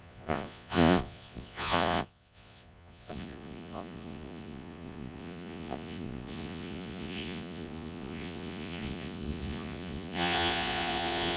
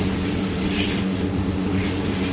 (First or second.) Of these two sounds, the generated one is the first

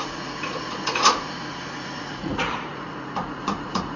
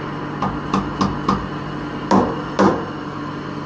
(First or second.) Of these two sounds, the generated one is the first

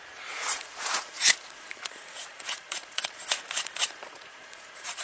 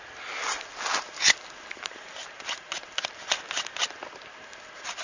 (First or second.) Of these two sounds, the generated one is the first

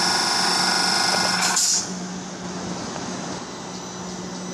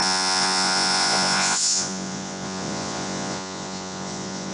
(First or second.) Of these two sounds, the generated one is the second